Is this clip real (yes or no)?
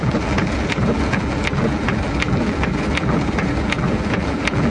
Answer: no